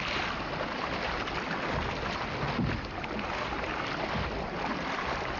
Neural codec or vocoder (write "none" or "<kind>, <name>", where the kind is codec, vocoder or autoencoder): none